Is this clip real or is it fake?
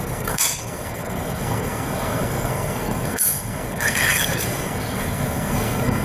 fake